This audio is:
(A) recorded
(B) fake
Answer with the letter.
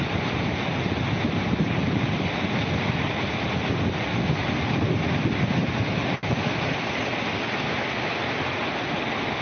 A